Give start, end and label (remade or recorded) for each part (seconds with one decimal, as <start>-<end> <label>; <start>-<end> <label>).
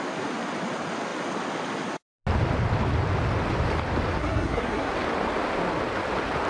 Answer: 0.0-4.2 recorded; 4.2-4.9 remade; 4.9-6.5 recorded